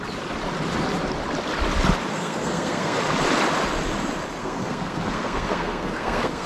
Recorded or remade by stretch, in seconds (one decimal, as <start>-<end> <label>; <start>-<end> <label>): 0.0-2.1 recorded; 2.1-3.0 remade; 3.0-4.4 recorded; 4.4-6.5 remade